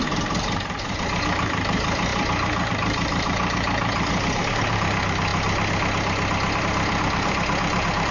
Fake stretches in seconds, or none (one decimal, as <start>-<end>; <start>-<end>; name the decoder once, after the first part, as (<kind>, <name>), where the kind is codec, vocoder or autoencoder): 0.0-5.3 (vocoder, BigVGAN v2); 6.6-8.1